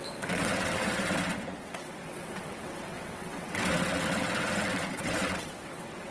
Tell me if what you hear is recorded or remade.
remade